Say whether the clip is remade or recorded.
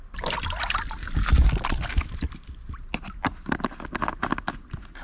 recorded